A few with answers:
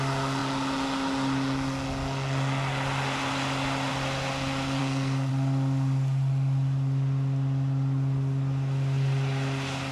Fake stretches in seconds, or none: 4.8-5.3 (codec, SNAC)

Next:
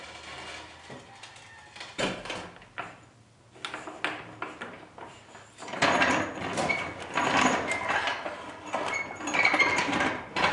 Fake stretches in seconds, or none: none